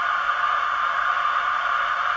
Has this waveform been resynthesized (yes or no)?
no